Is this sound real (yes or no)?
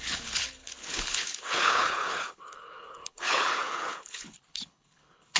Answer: no